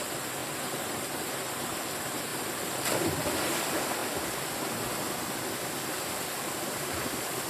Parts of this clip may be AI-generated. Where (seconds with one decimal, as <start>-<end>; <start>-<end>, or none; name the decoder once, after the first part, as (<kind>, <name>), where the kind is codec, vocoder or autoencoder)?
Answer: 0.0-4.0 (vocoder, BigVGAN v2); 6.0-7.5